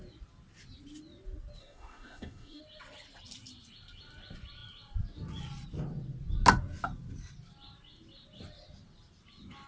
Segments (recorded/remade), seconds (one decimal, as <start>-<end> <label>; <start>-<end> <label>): 0.0-1.6 recorded; 1.6-2.6 remade; 2.6-9.7 recorded